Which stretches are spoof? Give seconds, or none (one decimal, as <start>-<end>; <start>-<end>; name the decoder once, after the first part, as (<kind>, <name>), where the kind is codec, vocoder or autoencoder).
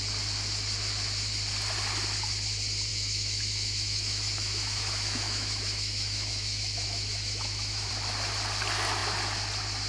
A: 2.9-7.9 (autoencoder, DAC-VAE)